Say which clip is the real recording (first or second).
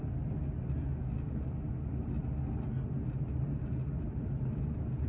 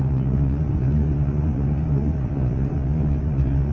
first